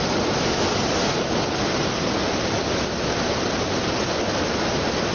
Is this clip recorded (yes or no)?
yes